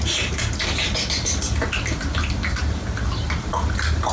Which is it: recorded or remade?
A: recorded